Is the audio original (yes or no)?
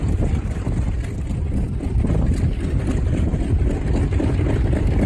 yes